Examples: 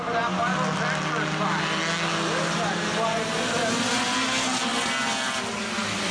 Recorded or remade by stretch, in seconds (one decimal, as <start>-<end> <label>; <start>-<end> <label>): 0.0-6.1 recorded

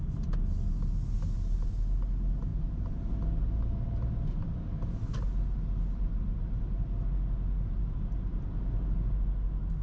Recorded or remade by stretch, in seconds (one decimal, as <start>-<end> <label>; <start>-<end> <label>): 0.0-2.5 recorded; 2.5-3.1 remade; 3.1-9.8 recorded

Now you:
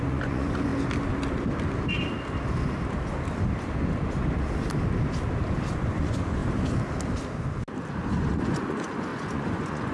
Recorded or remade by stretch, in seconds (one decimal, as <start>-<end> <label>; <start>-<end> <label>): 0.0-0.7 remade; 0.7-5.7 recorded; 5.7-6.4 remade; 6.4-8.1 recorded; 8.1-9.9 remade

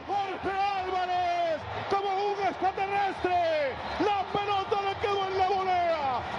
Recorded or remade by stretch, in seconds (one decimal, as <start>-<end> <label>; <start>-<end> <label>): 0.0-0.7 remade; 0.7-6.4 recorded

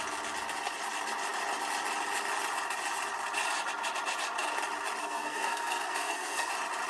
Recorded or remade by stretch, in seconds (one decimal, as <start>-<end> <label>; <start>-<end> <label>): 0.0-5.0 recorded; 5.0-6.5 remade; 6.5-6.9 recorded

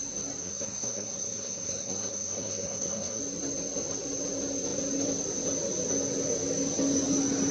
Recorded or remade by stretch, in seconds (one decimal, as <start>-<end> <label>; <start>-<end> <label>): 0.0-0.4 recorded; 0.4-3.2 remade; 3.2-7.5 recorded

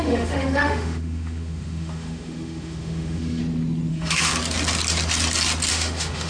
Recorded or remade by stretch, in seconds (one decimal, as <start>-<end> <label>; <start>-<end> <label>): 0.0-3.4 remade; 3.4-3.9 recorded; 3.9-4.3 remade; 4.3-5.7 recorded; 5.7-6.3 remade